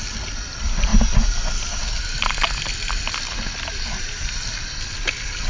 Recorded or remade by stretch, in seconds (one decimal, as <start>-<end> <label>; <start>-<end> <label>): 0.0-5.5 recorded